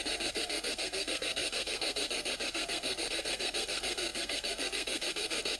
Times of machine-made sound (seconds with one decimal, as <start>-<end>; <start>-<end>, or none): 0.0-5.6